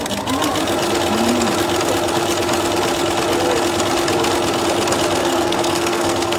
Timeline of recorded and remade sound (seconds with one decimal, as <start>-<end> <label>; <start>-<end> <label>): 0.0-5.2 recorded; 5.2-6.4 remade